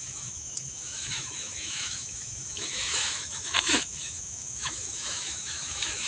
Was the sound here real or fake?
fake